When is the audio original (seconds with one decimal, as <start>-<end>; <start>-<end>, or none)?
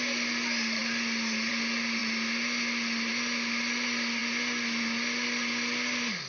0.0-6.3